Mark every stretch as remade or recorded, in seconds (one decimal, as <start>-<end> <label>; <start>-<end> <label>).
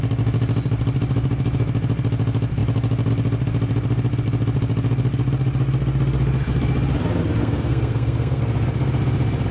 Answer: 0.0-7.4 recorded; 7.4-8.4 remade; 8.4-9.5 recorded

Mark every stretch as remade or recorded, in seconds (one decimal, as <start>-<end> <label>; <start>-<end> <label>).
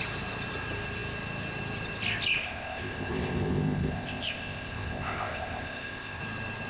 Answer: 0.0-2.4 recorded; 2.4-6.2 remade; 6.2-6.7 recorded